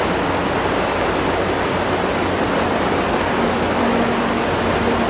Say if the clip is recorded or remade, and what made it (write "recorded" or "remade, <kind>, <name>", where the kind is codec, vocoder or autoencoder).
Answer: recorded